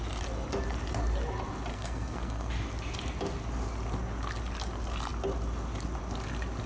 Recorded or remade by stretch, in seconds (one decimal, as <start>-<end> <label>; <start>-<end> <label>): 0.0-1.7 recorded; 1.7-2.5 remade; 2.5-6.7 recorded